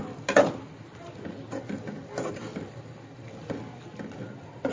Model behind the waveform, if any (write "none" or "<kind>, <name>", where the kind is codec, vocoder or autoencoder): none